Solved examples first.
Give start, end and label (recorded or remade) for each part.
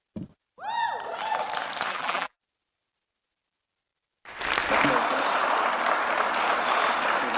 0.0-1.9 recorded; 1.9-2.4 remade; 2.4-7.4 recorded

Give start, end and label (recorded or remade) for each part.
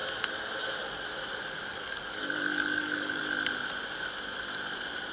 0.0-1.7 recorded; 1.7-3.2 remade; 3.2-5.1 recorded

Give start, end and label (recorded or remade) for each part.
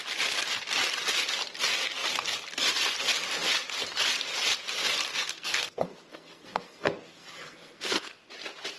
0.0-5.1 recorded; 5.1-8.3 remade; 8.3-8.8 recorded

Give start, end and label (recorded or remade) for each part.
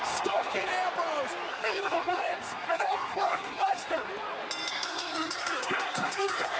0.0-0.7 remade; 0.7-1.5 recorded; 1.5-4.1 remade; 4.1-4.7 recorded; 4.7-6.6 remade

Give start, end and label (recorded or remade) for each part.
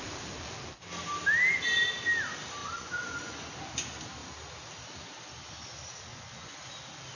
0.0-2.6 recorded; 2.6-3.5 remade; 3.5-6.1 recorded; 6.1-6.6 remade; 6.6-7.2 recorded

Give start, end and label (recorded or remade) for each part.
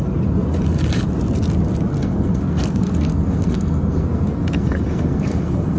0.0-1.9 recorded; 1.9-5.8 remade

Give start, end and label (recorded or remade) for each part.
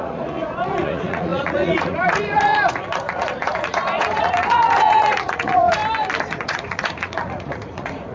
0.0-5.8 remade; 5.8-6.3 recorded; 6.3-8.1 remade